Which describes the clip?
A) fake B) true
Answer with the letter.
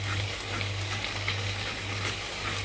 A